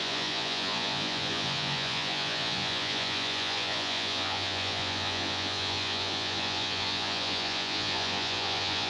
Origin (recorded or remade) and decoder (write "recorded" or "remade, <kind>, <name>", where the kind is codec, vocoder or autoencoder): remade, vocoder, Vocos